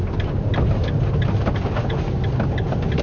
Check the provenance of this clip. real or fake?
real